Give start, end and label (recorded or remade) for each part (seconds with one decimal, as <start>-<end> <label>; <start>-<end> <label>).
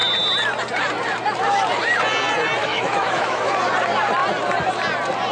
0.0-2.6 recorded; 2.6-3.5 remade; 3.5-5.3 recorded